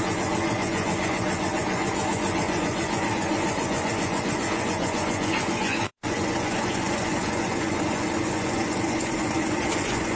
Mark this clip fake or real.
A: fake